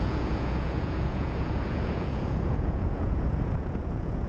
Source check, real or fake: fake